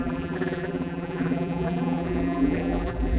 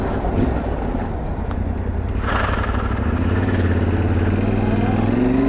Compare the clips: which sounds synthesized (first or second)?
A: first